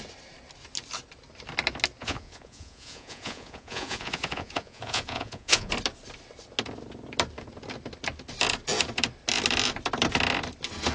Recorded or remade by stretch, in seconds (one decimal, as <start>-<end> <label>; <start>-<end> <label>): 0.0-2.0 recorded; 2.0-5.7 remade; 5.7-10.9 recorded